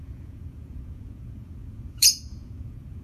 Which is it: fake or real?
fake